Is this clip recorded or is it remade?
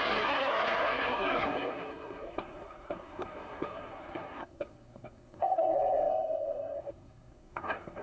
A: remade